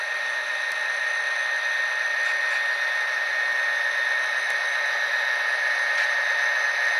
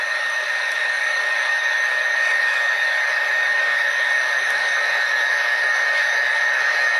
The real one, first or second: first